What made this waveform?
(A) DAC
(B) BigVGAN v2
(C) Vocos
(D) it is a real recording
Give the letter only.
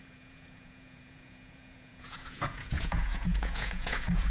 C